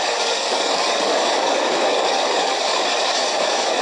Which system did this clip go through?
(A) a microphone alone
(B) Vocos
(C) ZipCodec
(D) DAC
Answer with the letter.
D